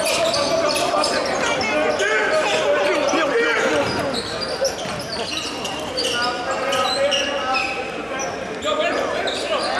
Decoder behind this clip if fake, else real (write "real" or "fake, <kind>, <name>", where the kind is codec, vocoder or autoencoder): real